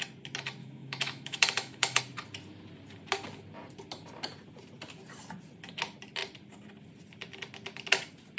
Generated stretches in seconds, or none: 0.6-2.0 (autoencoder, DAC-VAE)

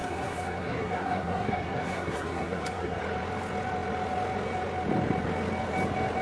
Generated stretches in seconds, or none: 0.0-3.0 (codec, SNAC)

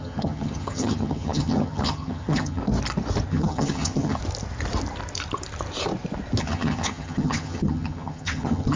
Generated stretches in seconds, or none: 0.0-2.6 (vocoder, HiFi-GAN); 3.3-4.2; 6.4-8.8

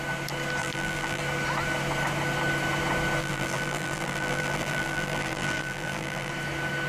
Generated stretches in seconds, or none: 0.6-1.2 (vocoder, BigVGAN v2); 3.2-6.3

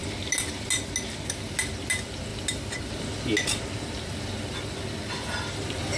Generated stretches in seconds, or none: none

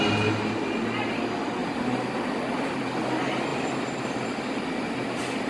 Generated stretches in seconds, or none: none

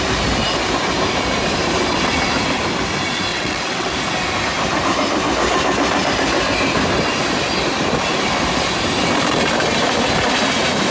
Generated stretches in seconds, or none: 3.3-3.9 (vocoder, WaveNeXt)